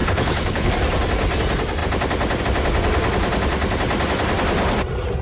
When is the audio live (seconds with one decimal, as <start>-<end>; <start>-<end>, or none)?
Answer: 0.7-5.2